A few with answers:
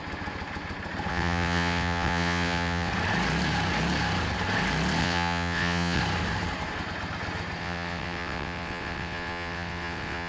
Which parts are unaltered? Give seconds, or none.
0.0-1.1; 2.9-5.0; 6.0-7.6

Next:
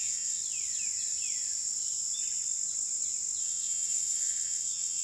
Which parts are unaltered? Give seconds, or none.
0.4-3.4

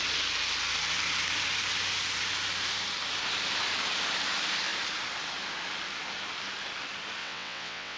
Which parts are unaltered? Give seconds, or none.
0.0-7.2

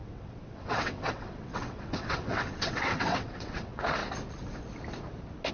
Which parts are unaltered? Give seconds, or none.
4.0-5.5